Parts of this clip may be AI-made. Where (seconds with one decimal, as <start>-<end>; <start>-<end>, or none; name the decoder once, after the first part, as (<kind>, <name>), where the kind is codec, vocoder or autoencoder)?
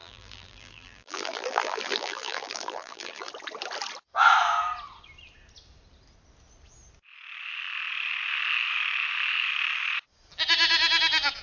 0.0-3.3 (vocoder, BigVGAN v2)